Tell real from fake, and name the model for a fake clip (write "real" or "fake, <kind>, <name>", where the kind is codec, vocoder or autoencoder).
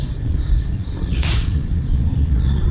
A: fake, vocoder, Vocos